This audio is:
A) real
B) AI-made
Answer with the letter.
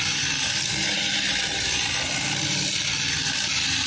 A